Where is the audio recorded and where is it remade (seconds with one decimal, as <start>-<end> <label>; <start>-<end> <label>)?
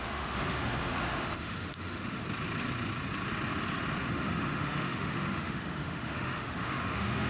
0.0-2.2 remade; 2.2-4.0 recorded; 4.0-7.3 remade